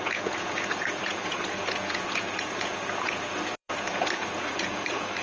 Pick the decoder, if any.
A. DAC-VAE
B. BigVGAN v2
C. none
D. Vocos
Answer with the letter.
D